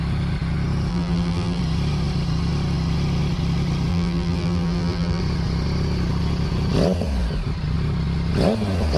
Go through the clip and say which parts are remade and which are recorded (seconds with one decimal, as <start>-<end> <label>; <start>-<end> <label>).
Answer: 0.0-0.9 recorded; 0.9-1.6 remade; 1.6-3.9 recorded; 3.9-5.2 remade; 5.2-9.0 recorded